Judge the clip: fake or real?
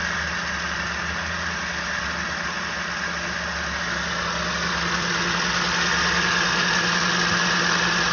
real